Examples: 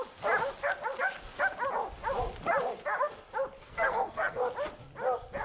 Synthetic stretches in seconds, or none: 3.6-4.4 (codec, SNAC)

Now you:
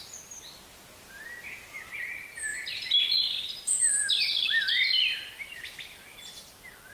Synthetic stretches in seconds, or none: 2.5-6.5 (vocoder, BigVGAN v2)

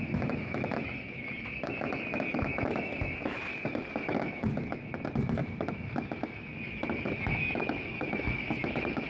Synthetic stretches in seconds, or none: 0.0-3.5 (autoencoder, DAC-VAE); 4.0-9.1

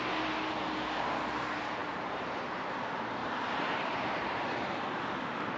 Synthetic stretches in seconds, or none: 1.8-2.4 (vocoder, BigVGAN v2); 3.2-4.8

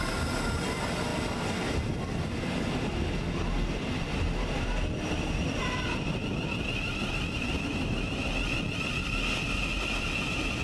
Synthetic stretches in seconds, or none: none

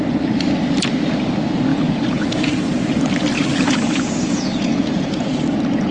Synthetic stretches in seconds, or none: 1.7-2.5 (vocoder, Vocos); 3.5-5.3

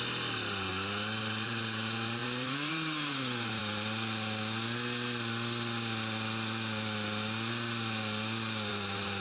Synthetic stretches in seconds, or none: 0.0-0.7 (vocoder, BigVGAN v2); 1.2-3.6; 8.7-9.2

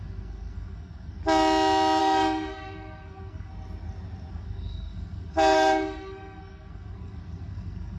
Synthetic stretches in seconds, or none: 0.0-1.2 (codec, SNAC); 2.0-3.5; 4.3-8.0